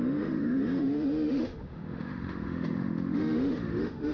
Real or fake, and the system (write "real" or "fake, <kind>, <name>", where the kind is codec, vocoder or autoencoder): fake, autoencoder, DAC-VAE